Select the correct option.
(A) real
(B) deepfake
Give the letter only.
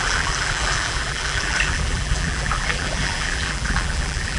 B